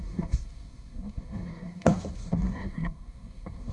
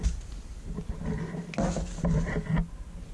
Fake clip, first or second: first